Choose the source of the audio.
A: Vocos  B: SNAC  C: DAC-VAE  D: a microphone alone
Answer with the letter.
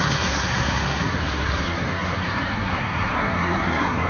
B